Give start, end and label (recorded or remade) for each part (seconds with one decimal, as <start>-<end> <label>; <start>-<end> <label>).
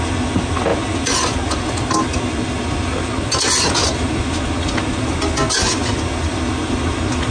0.0-5.8 recorded; 5.8-6.4 remade; 6.4-7.3 recorded